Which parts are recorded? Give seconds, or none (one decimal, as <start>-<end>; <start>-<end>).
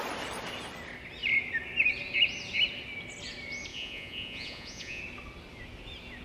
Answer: 0.0-3.7; 5.0-6.2